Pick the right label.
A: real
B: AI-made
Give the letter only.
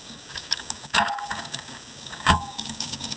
B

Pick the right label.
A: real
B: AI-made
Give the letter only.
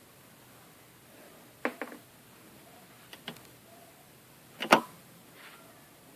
A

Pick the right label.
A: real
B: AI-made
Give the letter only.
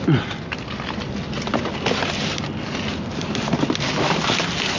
A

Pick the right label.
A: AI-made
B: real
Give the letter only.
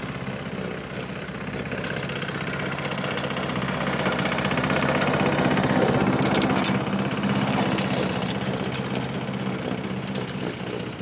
B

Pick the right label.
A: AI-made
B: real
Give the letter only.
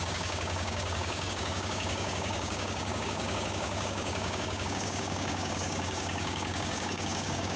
A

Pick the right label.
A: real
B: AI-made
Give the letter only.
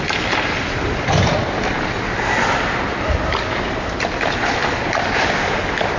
A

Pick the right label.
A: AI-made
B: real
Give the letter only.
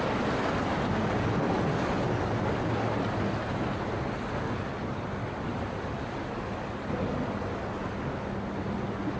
B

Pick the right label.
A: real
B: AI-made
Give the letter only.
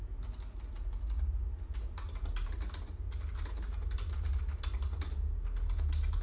A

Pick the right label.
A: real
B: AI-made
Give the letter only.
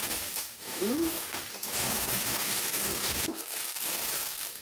B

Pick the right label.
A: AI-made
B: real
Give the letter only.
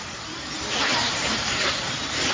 B